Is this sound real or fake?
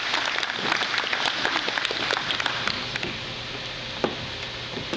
real